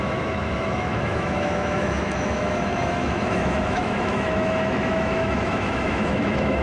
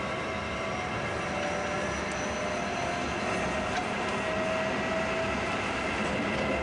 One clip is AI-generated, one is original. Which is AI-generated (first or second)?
first